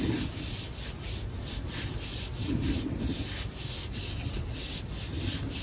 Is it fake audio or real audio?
real